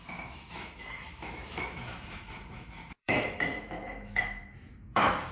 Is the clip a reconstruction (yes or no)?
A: yes